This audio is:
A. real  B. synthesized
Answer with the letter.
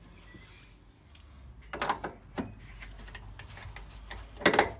A